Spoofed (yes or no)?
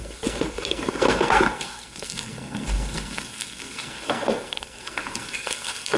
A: yes